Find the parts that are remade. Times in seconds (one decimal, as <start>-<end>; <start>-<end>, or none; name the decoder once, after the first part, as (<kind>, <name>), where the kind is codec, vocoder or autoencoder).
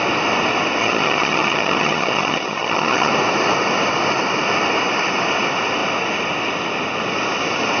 0.8-3.1 (vocoder, HiFi-GAN)